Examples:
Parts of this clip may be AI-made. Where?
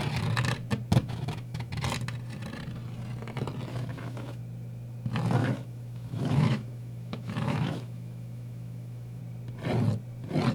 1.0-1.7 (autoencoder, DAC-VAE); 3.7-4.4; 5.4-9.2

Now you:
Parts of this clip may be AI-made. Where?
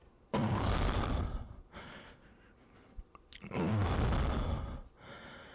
0.4-3.7 (vocoder, BigVGAN v2)